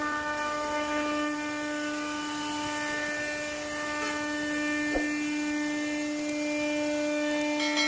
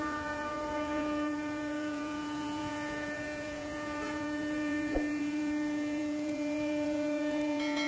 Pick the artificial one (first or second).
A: second